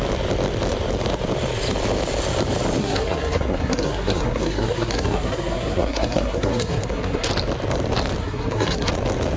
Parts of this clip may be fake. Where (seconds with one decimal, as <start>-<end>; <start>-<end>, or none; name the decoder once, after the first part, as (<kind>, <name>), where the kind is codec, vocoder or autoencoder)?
2.8-7.3 (codec, SNAC); 8.2-8.9